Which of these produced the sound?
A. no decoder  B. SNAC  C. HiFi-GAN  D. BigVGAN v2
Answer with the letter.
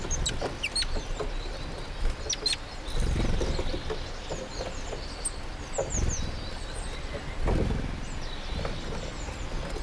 A